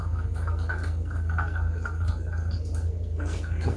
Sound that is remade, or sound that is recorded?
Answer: remade